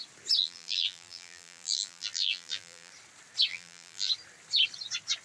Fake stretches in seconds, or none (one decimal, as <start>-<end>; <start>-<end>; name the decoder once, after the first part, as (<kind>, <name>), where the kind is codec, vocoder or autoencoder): 0.4-2.9 (vocoder, BigVGAN v2); 3.5-4.1